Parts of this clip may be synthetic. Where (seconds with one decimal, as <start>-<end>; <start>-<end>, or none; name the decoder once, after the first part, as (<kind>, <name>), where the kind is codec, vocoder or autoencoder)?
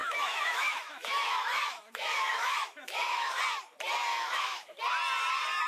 0.0-3.4 (autoencoder, DAC-VAE); 4.1-4.8